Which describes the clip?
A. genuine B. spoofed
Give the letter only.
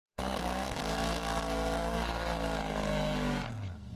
B